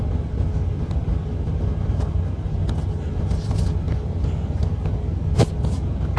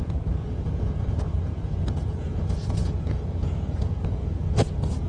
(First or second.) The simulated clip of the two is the second